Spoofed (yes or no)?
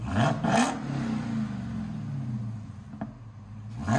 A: no